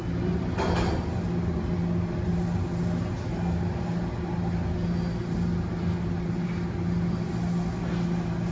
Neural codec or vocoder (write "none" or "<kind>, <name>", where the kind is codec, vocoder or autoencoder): none